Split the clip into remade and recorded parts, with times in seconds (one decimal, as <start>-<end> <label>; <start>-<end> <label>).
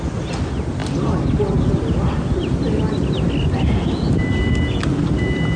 0.0-5.6 recorded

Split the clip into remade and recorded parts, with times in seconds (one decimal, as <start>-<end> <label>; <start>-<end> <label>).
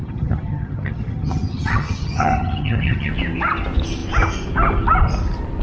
0.0-3.1 remade; 3.1-5.6 recorded